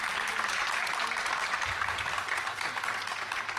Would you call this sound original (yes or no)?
yes